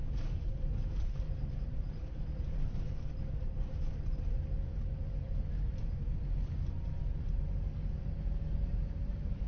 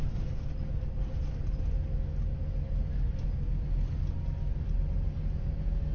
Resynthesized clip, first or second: first